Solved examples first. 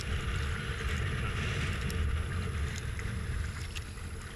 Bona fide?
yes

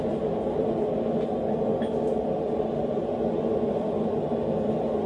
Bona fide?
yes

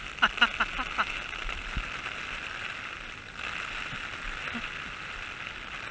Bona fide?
yes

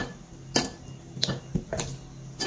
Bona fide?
yes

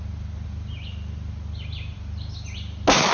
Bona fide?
yes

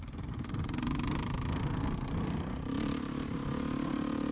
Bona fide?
yes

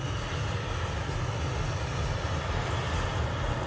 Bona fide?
yes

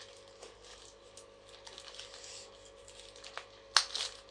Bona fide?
yes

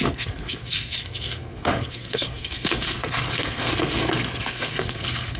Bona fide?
no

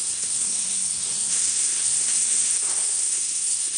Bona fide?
no